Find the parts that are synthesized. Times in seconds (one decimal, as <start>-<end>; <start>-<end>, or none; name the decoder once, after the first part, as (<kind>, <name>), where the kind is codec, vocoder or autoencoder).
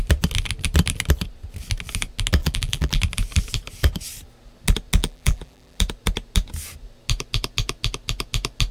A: 2.4-3.0 (vocoder, BigVGAN v2); 5.0-5.8